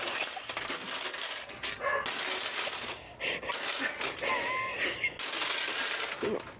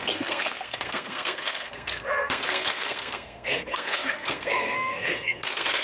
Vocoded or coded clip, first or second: second